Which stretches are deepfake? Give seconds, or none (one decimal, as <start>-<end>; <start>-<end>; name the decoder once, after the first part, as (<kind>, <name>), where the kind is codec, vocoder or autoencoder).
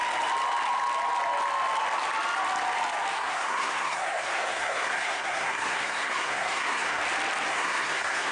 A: 3.1-7.0 (codec, SNAC); 7.5-8.3